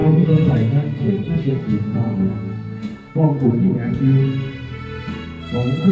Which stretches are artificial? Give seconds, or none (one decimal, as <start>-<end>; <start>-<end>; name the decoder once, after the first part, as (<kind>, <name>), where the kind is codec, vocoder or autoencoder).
0.0-3.5 (codec, SNAC)